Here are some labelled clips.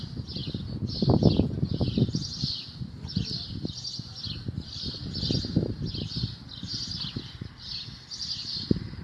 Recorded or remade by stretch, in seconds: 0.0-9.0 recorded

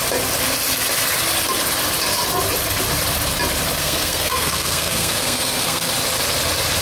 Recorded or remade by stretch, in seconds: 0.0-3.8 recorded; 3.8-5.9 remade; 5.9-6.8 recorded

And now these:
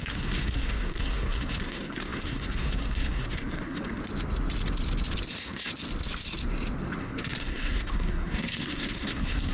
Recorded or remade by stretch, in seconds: 0.0-4.0 remade; 4.0-5.3 recorded; 5.3-5.7 remade; 5.7-7.0 recorded; 7.0-9.5 remade

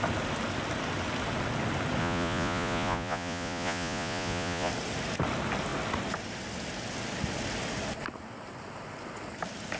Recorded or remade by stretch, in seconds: 0.0-2.0 recorded; 2.0-4.7 remade; 4.7-9.8 recorded

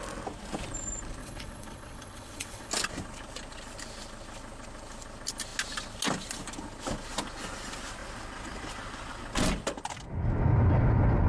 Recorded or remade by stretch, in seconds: 0.0-1.2 recorded; 1.2-2.7 remade; 2.7-11.3 recorded

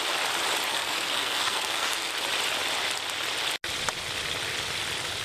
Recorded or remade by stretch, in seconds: 0.0-0.7 recorded; 0.7-2.1 remade; 2.1-5.2 recorded